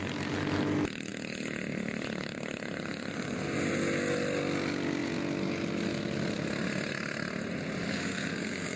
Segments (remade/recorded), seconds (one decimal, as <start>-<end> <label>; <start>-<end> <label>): 0.0-7.9 recorded; 7.9-8.8 remade